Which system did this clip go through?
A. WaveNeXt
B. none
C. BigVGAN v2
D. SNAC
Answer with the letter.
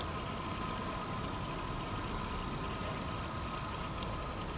B